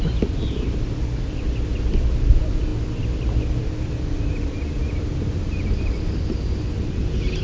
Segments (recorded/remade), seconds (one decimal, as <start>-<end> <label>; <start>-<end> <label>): 0.0-7.4 recorded